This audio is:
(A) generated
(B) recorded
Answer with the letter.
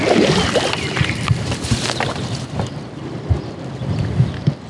A